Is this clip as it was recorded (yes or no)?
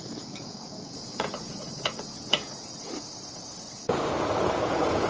no